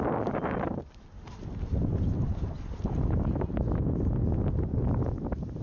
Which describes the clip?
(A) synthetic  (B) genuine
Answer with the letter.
B